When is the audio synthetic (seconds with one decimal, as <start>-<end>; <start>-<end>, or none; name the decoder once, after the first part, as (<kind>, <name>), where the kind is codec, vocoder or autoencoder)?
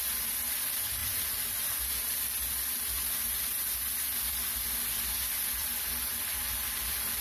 1.0-2.3 (vocoder, BigVGAN v2); 5.6-6.4